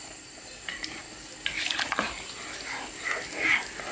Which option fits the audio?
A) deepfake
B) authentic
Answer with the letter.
A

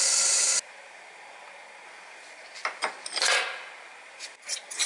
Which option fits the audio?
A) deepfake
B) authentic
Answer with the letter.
A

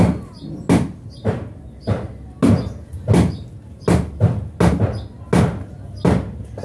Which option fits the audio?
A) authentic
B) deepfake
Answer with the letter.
A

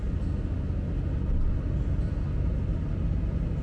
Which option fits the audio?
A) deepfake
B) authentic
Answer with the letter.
B